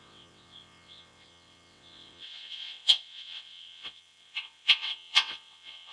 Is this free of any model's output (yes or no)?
no